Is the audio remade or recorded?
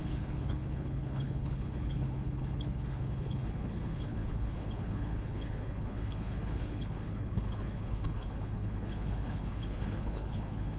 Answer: remade